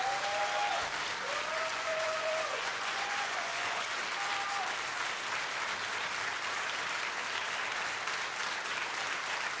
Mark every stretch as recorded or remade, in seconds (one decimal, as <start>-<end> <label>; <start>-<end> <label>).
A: 0.0-1.7 recorded; 1.7-4.0 remade; 4.0-9.6 recorded